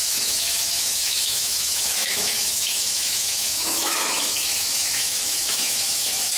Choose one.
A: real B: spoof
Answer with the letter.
B